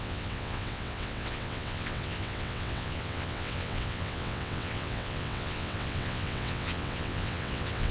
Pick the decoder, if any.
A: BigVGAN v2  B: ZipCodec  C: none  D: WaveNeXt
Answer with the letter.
D